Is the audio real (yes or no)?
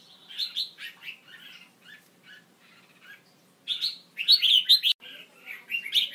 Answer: yes